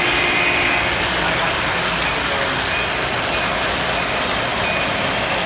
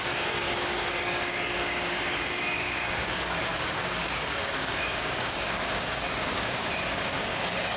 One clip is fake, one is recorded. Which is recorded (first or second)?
first